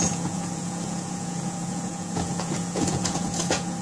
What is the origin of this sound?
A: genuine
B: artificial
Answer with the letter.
B